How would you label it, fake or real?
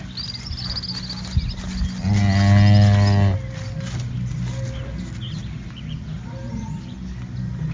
real